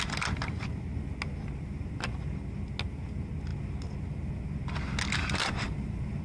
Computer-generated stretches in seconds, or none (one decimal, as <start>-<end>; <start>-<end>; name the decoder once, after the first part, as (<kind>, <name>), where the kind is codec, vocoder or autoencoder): 5.4-6.2 (vocoder, BigVGAN v2)